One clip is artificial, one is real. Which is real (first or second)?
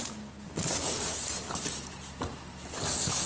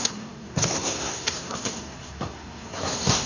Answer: first